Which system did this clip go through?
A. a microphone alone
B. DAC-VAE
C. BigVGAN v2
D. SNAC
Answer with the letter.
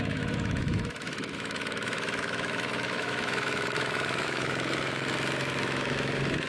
B